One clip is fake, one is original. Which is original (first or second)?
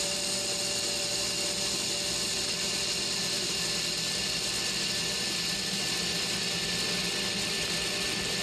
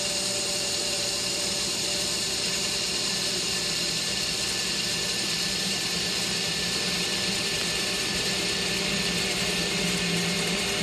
first